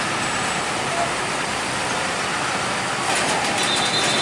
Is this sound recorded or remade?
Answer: recorded